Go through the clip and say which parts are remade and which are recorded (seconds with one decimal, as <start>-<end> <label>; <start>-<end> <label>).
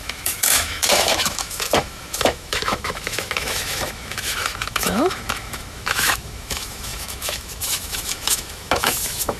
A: 0.0-9.4 remade